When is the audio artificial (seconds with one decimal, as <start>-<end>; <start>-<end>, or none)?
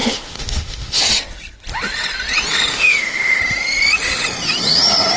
0.0-1.0; 2.7-3.4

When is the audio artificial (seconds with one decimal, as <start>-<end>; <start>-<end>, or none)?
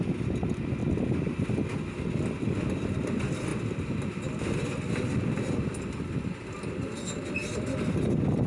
0.8-2.8; 3.5-6.1; 7.4-8.1